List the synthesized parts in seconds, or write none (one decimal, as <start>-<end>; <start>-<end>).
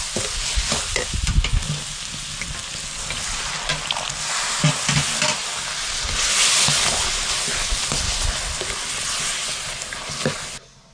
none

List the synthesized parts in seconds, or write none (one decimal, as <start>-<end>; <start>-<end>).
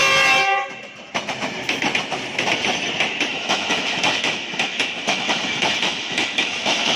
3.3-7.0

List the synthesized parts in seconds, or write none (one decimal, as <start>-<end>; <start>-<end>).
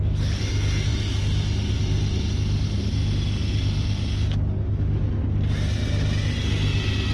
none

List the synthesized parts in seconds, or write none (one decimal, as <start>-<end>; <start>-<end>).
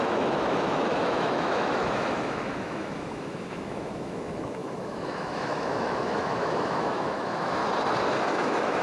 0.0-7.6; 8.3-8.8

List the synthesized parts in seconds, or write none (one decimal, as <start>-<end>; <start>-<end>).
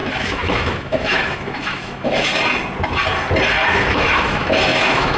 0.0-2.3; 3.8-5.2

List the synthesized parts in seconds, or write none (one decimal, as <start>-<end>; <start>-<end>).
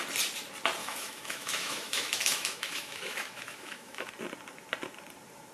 0.8-4.1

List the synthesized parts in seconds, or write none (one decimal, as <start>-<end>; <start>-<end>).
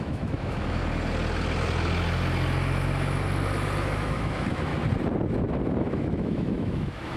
0.0-0.8; 3.8-4.7; 5.8-7.2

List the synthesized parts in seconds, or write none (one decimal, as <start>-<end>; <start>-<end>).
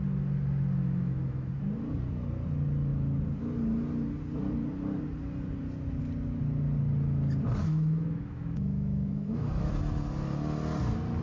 0.8-1.5; 7.6-9.7